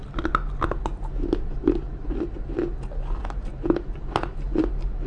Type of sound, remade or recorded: recorded